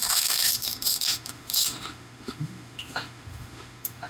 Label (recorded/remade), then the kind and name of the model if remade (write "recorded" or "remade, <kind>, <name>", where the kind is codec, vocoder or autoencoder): remade, autoencoder, DAC-VAE